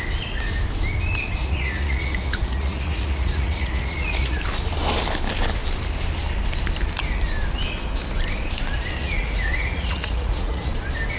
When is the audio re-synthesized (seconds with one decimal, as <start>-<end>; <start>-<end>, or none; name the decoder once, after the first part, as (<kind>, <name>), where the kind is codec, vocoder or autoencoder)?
1.4-4.4 (vocoder, Vocos); 9.0-10.7